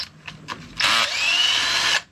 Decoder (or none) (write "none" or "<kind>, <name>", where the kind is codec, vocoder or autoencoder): none